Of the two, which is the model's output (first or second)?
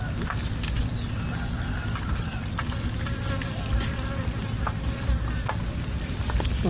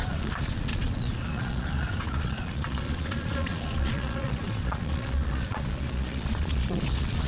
second